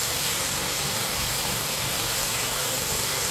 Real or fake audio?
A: fake